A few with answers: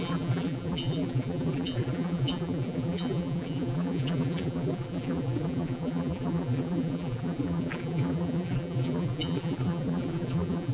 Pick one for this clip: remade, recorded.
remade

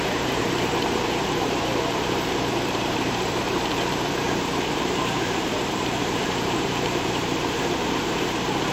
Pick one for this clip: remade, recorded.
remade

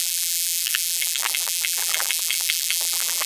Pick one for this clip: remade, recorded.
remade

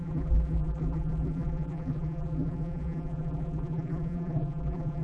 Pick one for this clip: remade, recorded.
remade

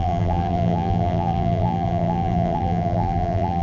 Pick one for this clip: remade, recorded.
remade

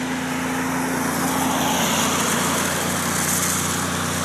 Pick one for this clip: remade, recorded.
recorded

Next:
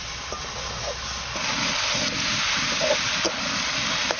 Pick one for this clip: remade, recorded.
recorded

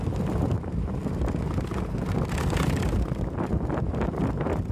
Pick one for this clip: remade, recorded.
recorded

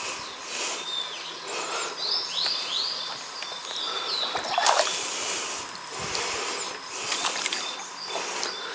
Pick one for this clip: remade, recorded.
recorded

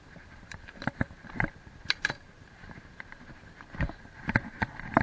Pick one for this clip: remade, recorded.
remade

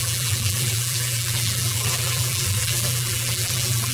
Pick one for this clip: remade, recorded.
remade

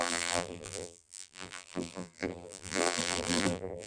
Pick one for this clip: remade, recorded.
remade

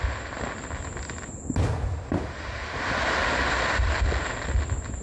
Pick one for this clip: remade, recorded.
recorded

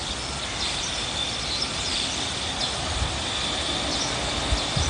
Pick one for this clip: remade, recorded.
remade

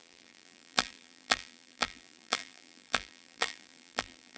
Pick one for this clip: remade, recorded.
remade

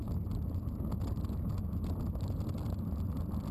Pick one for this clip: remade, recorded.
recorded